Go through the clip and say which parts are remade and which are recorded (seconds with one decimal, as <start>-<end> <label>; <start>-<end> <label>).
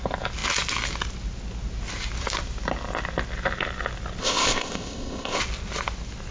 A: 0.0-4.2 recorded; 4.2-5.4 remade; 5.4-6.3 recorded